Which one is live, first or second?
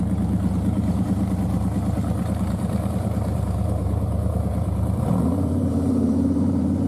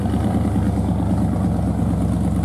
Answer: second